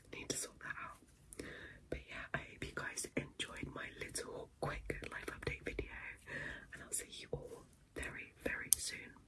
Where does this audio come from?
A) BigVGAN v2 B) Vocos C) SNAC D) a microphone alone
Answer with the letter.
D